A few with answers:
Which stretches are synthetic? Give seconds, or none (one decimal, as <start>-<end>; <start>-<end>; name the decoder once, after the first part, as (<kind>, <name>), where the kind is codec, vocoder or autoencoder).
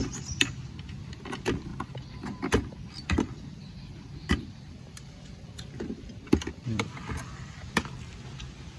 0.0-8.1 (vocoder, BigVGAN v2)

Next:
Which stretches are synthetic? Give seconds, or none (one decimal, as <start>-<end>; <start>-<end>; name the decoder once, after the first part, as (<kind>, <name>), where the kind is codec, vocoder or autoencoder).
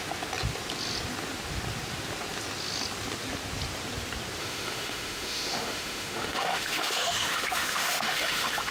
4.4-8.7 (autoencoder, DAC-VAE)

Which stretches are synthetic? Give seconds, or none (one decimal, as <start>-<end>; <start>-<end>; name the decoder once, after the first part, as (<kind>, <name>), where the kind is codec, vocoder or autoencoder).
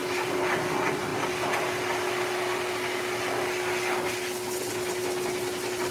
none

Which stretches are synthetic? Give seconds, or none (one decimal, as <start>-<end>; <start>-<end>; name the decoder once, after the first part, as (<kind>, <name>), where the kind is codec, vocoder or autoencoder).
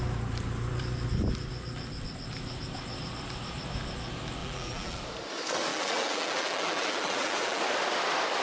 4.4-5.0 (vocoder, BigVGAN v2); 5.7-7.6